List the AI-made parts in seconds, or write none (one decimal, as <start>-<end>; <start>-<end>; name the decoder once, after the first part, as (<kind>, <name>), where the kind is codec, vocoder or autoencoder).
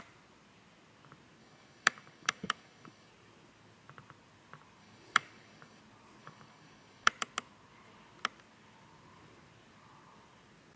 1.4-3.1 (codec, DAC); 4.8-5.8; 6.2-7.1